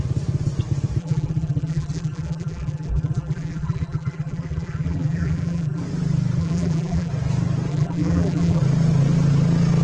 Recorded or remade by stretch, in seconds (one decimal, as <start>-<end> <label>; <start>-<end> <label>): 0.0-1.0 recorded; 1.0-5.8 remade; 5.8-6.4 recorded; 6.4-7.1 remade; 7.1-7.7 recorded; 7.7-8.6 remade; 8.6-9.8 recorded